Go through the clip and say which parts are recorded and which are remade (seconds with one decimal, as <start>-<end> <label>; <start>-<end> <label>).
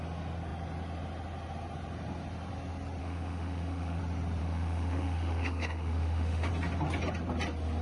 0.0-3.0 recorded; 3.0-4.0 remade; 4.0-4.4 recorded; 4.4-6.5 remade; 6.5-7.8 recorded